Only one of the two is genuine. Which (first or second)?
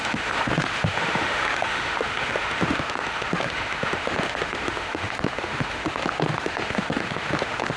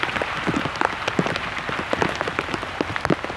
second